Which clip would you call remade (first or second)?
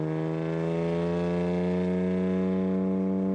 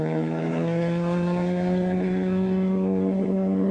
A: second